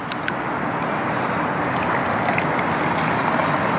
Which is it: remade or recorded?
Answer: recorded